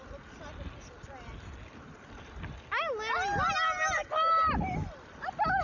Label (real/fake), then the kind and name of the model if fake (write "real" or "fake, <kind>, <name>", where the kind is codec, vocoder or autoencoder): real